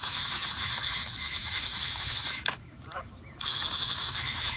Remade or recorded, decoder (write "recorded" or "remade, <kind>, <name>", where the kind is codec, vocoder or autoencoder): remade, autoencoder, DAC-VAE